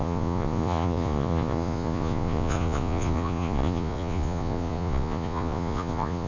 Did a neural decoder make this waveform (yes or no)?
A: yes